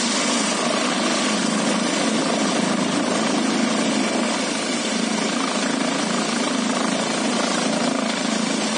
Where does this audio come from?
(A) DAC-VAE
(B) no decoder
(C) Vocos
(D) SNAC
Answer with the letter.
B